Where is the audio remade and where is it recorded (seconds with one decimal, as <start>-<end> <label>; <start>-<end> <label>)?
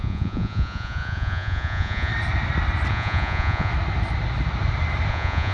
0.0-2.1 remade; 2.1-2.9 recorded; 2.9-3.7 remade; 3.7-5.1 recorded; 5.1-5.5 remade